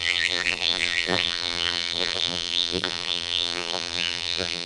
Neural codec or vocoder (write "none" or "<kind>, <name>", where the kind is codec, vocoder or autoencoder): vocoder, BigVGAN v2